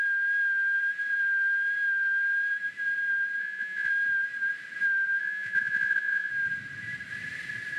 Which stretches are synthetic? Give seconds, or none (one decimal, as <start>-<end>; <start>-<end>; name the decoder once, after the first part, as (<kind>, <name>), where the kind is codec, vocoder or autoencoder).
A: 3.4-3.9 (vocoder, Vocos); 5.2-6.3

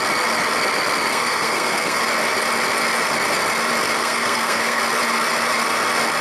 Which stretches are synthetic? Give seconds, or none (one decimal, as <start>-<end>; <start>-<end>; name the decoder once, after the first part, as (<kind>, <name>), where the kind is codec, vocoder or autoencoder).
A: 1.1-2.0 (codec, SNAC); 4.0-4.8

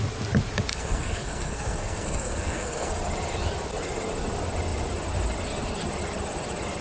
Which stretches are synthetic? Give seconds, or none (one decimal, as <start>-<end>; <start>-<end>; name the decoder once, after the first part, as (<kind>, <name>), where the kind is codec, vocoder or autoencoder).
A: 0.7-3.0 (codec, SNAC)

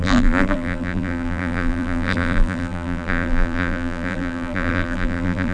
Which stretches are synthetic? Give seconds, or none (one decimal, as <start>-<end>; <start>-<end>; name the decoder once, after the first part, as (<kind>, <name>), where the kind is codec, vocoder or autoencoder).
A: 0.0-5.5 (vocoder, BigVGAN v2)

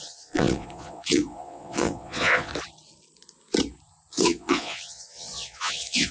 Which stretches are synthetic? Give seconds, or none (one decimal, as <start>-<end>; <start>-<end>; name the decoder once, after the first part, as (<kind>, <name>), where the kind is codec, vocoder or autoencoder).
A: 0.0-2.5 (vocoder, Vocos); 4.1-6.1

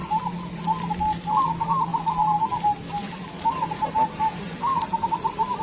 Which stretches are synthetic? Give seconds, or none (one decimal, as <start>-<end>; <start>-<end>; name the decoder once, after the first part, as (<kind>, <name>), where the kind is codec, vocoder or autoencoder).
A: none

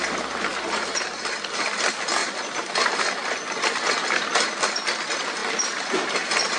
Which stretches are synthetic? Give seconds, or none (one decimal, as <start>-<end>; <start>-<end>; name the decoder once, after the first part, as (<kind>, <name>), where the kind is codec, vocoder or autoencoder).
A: 0.5-1.3 (vocoder, BigVGAN v2); 2.2-3.0